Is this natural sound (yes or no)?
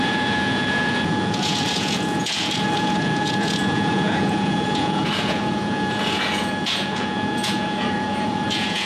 no